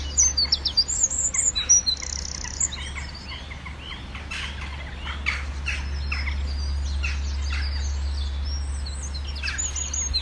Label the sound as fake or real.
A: real